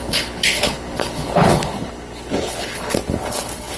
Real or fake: fake